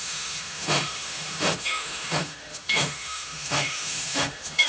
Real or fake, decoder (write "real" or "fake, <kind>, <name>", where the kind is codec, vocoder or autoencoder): fake, autoencoder, DAC-VAE